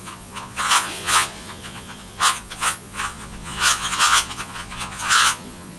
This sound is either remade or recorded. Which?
remade